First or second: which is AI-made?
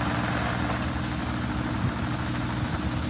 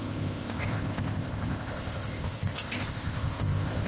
second